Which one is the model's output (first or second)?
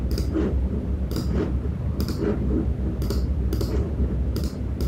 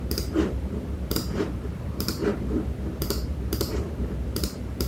second